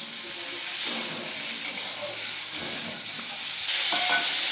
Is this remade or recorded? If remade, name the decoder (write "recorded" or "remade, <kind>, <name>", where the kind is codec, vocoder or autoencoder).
recorded